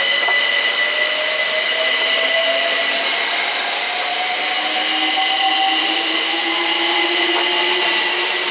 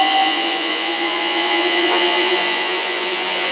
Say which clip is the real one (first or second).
first